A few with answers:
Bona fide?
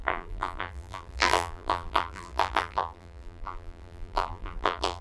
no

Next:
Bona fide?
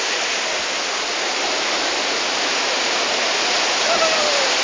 yes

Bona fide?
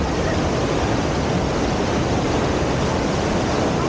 yes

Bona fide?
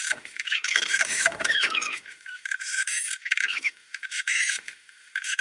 no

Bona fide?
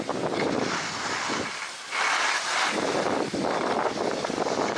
yes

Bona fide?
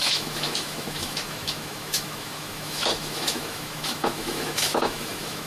no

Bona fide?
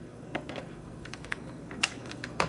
no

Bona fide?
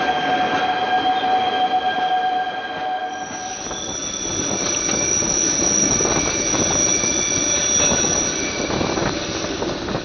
yes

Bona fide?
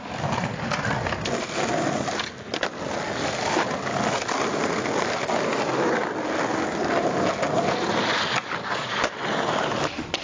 yes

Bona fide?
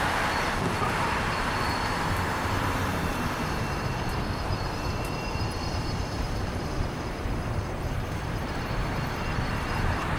no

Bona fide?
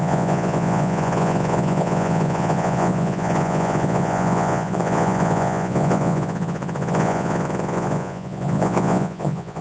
no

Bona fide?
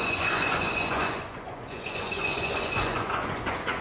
no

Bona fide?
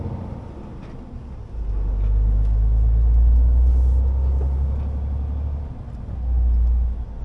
yes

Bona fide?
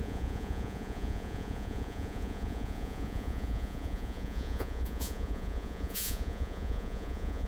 no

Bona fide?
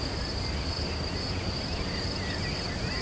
yes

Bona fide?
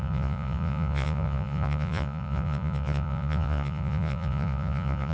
no